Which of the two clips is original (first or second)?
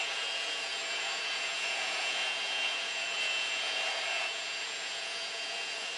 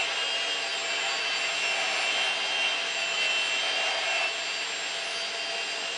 second